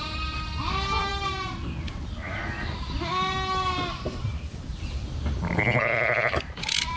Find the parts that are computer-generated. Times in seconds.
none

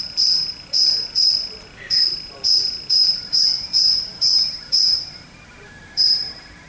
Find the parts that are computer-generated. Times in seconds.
0.0-1.1 (vocoder, BigVGAN v2); 2.1-6.7